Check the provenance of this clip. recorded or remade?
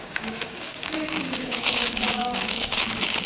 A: remade